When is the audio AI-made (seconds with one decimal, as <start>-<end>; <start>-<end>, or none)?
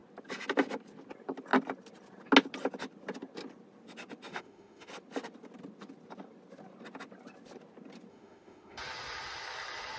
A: 4.3-4.9; 8.1-8.8